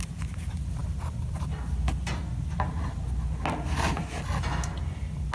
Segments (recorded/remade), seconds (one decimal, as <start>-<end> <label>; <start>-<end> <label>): 0.0-5.3 recorded

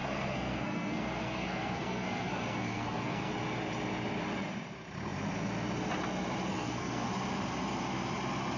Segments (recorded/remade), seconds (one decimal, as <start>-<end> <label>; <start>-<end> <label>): 0.0-3.3 remade; 3.3-6.5 recorded; 6.5-7.1 remade; 7.1-8.6 recorded

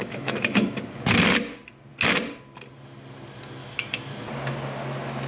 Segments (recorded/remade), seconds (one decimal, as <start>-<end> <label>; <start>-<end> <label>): 0.0-0.8 remade; 0.8-3.6 recorded; 3.6-4.1 remade; 4.1-5.3 recorded

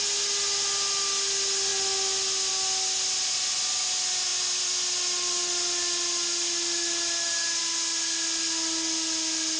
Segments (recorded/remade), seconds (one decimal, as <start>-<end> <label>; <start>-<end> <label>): 0.0-9.6 recorded

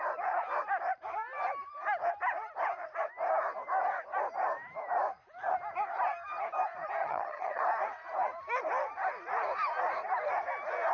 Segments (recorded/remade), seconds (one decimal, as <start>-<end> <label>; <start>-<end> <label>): 0.0-7.0 recorded; 7.0-7.6 remade; 7.6-10.9 recorded

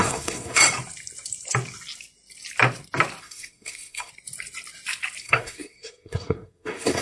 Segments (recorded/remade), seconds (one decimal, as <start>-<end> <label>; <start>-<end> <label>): 0.0-0.6 remade; 0.6-3.2 recorded; 3.2-4.1 remade; 4.1-5.2 recorded; 5.2-7.0 remade

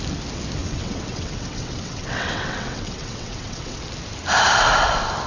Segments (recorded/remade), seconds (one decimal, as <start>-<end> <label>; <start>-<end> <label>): 0.0-0.6 recorded; 0.6-3.8 remade; 3.8-5.3 recorded